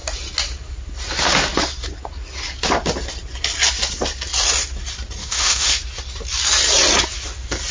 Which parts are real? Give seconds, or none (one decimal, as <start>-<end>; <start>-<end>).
0.0-5.2; 5.8-7.7